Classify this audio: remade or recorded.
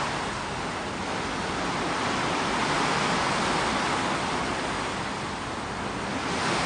recorded